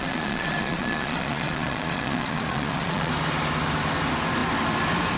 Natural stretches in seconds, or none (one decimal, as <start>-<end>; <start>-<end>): 3.1-5.2